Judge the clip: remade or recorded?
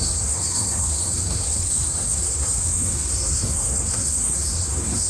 remade